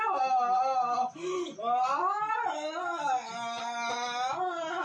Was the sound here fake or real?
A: real